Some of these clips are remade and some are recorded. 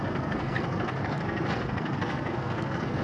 remade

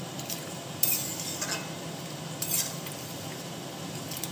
recorded